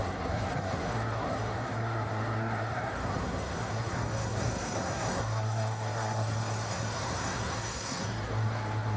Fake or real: fake